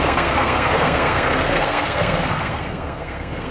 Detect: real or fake fake